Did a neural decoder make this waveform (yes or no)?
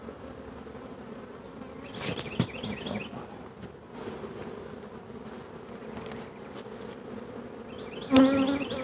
no